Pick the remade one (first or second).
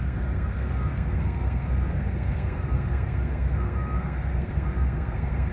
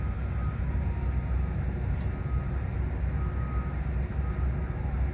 first